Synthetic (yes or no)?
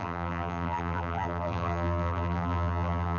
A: yes